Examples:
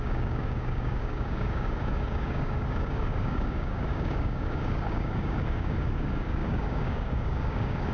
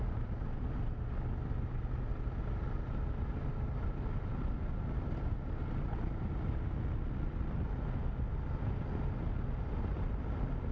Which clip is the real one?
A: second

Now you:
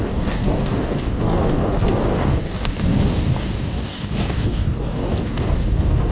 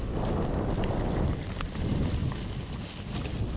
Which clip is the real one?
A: second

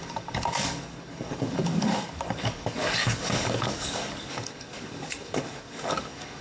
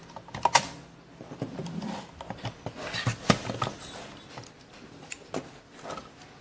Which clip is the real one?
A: second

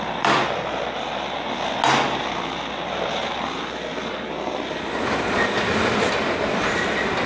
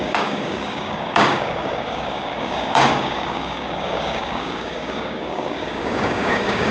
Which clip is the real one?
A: first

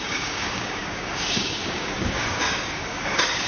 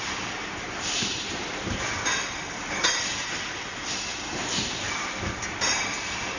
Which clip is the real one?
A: second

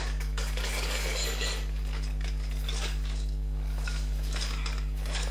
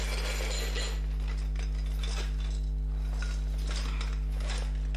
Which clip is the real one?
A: second